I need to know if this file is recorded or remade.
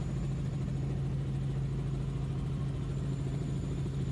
recorded